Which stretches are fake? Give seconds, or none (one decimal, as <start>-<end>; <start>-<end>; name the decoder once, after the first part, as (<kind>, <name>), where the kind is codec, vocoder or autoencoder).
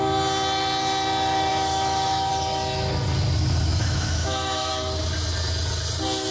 1.5-2.3 (autoencoder, DAC-VAE); 3.7-4.7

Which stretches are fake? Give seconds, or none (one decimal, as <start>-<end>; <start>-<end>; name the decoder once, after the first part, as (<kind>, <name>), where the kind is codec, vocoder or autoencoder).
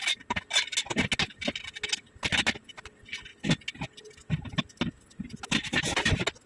none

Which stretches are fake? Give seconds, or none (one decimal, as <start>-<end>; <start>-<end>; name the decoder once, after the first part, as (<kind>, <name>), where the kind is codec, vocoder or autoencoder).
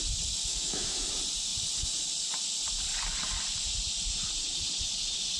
0.5-1.1 (autoencoder, DAC-VAE)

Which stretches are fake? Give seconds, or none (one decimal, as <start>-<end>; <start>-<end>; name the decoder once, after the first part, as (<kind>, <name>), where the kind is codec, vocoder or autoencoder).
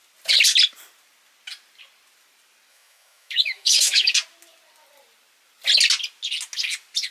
2.7-4.1 (autoencoder, DAC-VAE)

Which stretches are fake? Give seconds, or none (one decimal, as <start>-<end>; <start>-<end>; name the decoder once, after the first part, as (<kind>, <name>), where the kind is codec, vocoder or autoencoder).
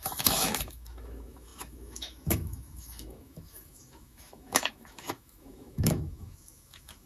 0.0-7.1 (autoencoder, DAC-VAE)